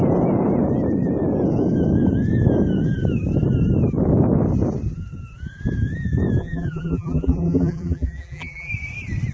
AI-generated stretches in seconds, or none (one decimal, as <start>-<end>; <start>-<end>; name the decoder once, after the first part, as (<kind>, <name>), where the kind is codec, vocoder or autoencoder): 6.4-8.7 (vocoder, BigVGAN v2)